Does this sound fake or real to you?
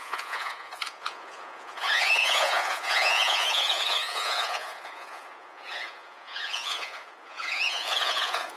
fake